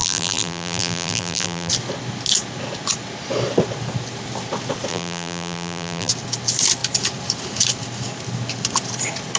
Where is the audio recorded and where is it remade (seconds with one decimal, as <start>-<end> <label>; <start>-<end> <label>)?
0.0-1.7 remade; 1.7-4.9 recorded; 4.9-6.1 remade; 6.1-9.4 recorded

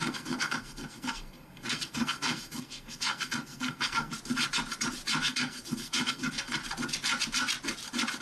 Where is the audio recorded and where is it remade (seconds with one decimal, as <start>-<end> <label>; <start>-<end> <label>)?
0.0-4.1 remade; 4.1-5.2 recorded; 5.2-6.6 remade; 6.6-8.2 recorded

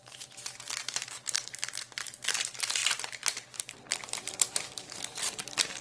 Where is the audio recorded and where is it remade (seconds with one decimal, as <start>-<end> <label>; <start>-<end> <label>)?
0.0-2.8 remade; 2.8-3.6 recorded; 3.6-5.8 remade

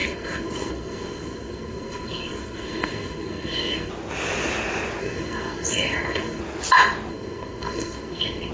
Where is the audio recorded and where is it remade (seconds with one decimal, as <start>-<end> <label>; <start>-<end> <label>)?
0.0-3.9 remade; 3.9-5.0 recorded; 5.0-6.4 remade; 6.4-7.1 recorded; 7.1-8.5 remade

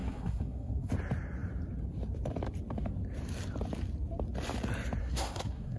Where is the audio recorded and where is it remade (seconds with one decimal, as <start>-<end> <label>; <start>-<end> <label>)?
0.0-0.9 remade; 0.9-5.0 recorded; 5.0-5.8 remade

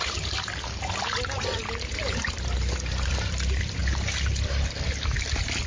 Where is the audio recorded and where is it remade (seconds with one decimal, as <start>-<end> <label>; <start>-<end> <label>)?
0.0-3.8 remade; 3.8-5.2 recorded; 5.2-5.7 remade

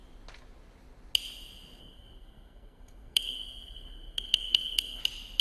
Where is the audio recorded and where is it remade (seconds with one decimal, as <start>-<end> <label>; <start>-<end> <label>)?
0.0-1.8 recorded; 1.8-5.0 remade; 5.0-5.4 recorded

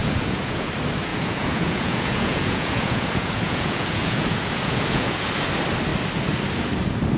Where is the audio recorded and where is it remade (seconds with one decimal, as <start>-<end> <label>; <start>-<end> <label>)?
0.0-0.7 remade; 0.7-1.1 recorded; 1.1-5.3 remade; 5.3-7.2 recorded